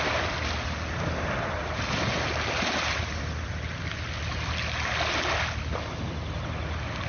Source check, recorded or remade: recorded